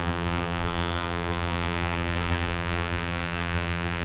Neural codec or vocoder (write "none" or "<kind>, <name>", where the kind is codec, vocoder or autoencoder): vocoder, BigVGAN v2